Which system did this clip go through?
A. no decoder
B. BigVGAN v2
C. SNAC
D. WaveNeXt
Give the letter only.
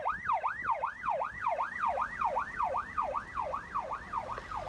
A